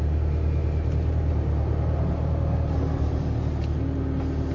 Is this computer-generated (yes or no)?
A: no